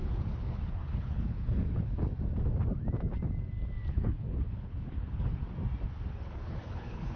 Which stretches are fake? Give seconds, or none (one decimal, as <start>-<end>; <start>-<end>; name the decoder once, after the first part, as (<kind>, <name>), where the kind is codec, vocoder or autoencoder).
0.0-2.1 (codec, HILCodec); 3.9-5.4; 6.1-7.2